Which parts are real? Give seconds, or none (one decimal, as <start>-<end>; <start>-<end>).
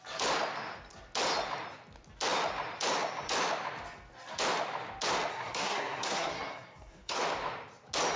0.0-5.3; 7.2-8.2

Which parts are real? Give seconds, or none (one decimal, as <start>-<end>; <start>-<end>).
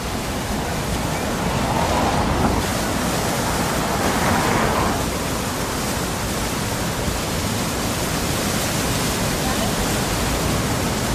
0.0-11.1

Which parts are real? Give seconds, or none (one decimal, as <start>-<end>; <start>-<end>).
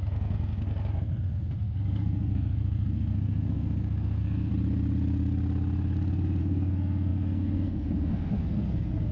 4.5-6.4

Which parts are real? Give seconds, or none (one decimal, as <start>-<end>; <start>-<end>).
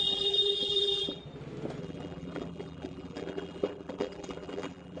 1.2-1.8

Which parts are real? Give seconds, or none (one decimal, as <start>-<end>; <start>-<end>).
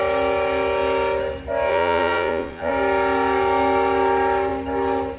0.0-1.7; 2.7-5.2